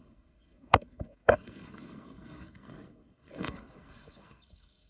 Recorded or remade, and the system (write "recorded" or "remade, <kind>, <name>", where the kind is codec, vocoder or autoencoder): remade, codec, SNAC